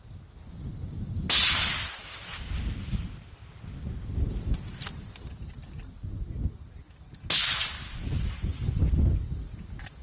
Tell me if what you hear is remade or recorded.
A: recorded